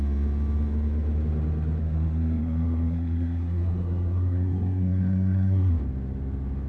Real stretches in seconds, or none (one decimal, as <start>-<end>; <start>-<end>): 0.0-1.8; 5.8-6.7